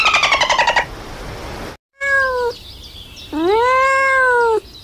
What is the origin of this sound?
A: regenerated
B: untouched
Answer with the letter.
B